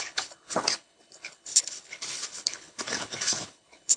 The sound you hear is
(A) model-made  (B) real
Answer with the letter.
A